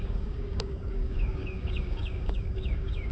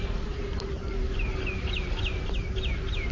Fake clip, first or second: first